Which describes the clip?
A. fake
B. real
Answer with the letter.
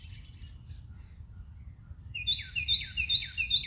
B